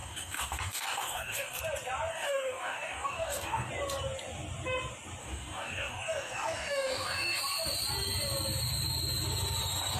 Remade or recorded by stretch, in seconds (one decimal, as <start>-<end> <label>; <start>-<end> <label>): 0.0-1.6 remade; 1.6-2.1 recorded; 2.1-3.7 remade; 3.7-5.2 recorded; 5.2-7.4 remade; 7.4-10.0 recorded